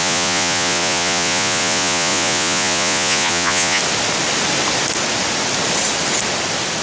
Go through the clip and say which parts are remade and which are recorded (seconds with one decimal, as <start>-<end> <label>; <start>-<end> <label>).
0.0-3.8 remade; 3.8-6.8 recorded

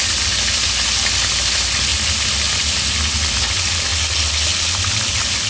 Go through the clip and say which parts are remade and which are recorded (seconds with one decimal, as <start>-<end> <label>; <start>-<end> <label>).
0.0-5.5 recorded

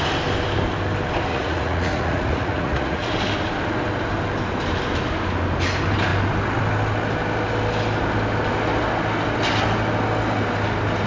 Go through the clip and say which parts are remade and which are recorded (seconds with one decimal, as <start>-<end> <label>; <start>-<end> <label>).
0.0-1.3 recorded; 1.3-3.1 remade; 3.1-11.1 recorded

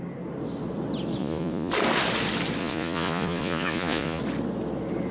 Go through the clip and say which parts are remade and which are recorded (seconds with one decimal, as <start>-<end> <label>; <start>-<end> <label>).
0.0-1.2 recorded; 1.2-1.7 remade; 1.7-2.6 recorded; 2.6-4.2 remade; 4.2-5.1 recorded

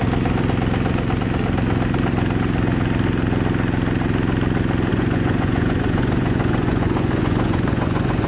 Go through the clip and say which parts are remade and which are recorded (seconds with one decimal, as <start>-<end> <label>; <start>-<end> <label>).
0.0-4.9 recorded; 4.9-8.3 remade